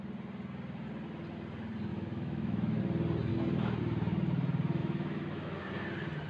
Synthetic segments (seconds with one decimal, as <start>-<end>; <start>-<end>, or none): 1.9-2.8; 3.3-3.8; 4.8-5.6